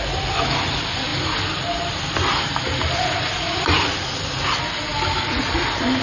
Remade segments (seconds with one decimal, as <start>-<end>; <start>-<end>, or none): none